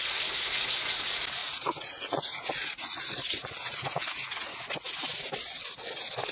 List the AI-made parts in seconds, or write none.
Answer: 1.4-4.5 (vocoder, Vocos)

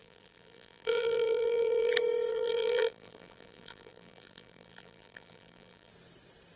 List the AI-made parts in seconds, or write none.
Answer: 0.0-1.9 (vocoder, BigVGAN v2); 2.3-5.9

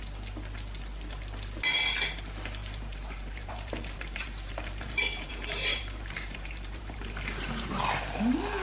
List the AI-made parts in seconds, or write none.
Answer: 2.6-5.3 (vocoder, BigVGAN v2); 5.7-7.7